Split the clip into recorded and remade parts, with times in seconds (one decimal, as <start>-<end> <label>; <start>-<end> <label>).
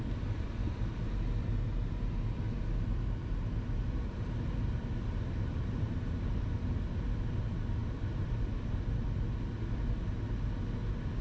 0.0-7.8 recorded; 7.8-8.5 remade; 8.5-11.2 recorded